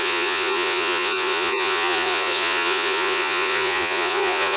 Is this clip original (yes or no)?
no